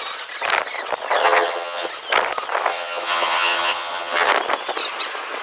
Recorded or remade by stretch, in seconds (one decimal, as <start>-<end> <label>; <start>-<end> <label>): 0.0-1.2 recorded; 1.2-1.9 remade; 1.9-2.7 recorded; 2.7-4.3 remade; 4.3-5.4 recorded